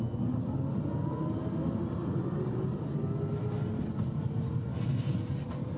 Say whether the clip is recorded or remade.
recorded